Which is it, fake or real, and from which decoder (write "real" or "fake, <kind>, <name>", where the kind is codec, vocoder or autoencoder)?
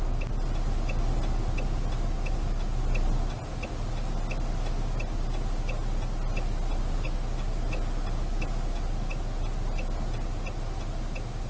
real